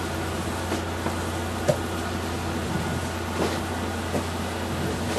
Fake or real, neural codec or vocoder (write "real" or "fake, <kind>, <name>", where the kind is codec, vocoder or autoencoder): real